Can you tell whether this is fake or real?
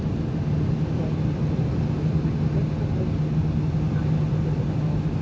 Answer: real